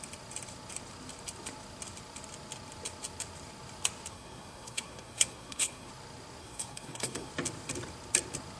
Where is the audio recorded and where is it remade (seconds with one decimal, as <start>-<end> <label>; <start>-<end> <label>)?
0.0-4.1 recorded; 4.1-5.9 remade; 5.9-6.4 recorded; 6.4-7.3 remade; 7.3-8.6 recorded